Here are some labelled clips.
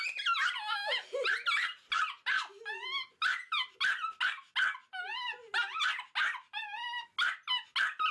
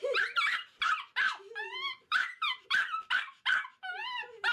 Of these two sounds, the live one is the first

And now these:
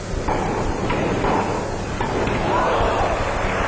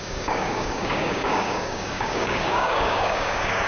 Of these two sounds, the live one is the first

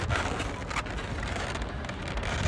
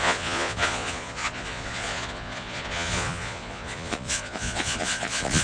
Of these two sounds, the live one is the first